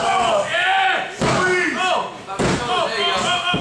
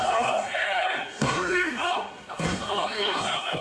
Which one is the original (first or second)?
first